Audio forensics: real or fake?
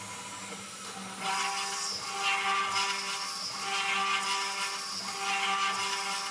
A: real